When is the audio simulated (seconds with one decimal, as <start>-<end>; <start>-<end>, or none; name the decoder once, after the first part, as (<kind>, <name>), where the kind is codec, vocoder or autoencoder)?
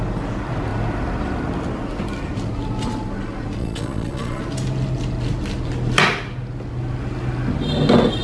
3.6-4.4 (vocoder, Vocos)